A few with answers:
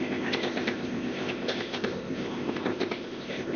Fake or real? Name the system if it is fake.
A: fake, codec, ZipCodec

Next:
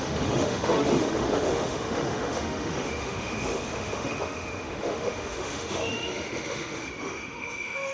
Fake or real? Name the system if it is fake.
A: fake, autoencoder, DAC-VAE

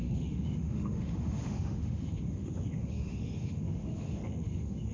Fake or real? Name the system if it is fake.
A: fake, autoencoder, DAC-VAE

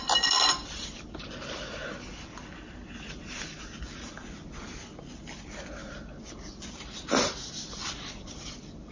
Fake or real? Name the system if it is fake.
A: fake, vocoder, BigVGAN v2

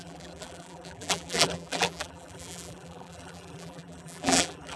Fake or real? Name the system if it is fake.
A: fake, vocoder, BigVGAN v2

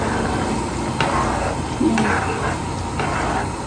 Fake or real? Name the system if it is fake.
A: real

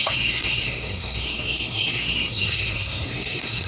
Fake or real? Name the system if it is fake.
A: fake, codec, SNAC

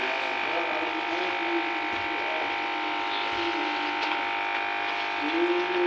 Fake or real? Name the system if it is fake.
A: real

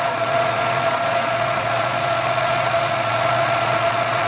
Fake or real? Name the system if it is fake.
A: fake, vocoder, Vocos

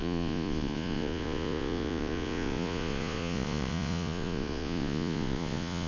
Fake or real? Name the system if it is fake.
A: fake, vocoder, Vocos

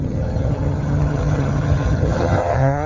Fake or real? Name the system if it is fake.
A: fake, vocoder, HiFi-GAN